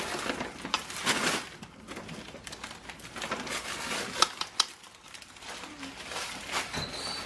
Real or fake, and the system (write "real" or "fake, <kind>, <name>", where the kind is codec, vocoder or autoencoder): real